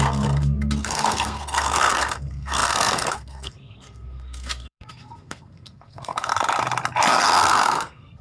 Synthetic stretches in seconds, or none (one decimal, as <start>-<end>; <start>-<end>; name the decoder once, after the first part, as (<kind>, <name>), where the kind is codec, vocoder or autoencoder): 0.0-6.3 (codec, SNAC); 7.1-8.2